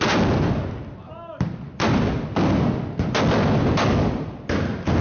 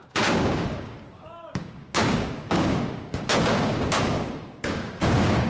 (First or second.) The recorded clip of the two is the first